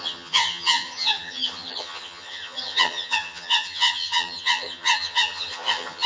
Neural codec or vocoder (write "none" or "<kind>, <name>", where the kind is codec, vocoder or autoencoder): vocoder, HiFi-GAN